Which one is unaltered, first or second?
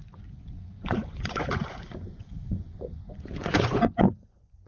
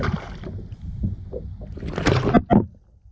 second